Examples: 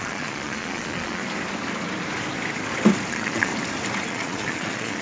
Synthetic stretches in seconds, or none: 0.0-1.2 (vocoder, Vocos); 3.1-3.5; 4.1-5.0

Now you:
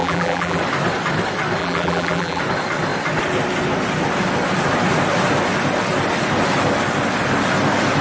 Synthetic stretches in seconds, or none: 0.0-0.6 (vocoder, BigVGAN v2); 1.6-2.4

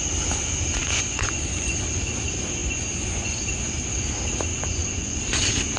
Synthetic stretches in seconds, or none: 0.8-1.8 (vocoder, Vocos); 2.6-3.4; 4.5-5.2